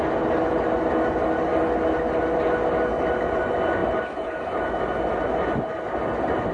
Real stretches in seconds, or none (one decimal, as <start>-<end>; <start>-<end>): 0.0-3.8; 4.7-6.5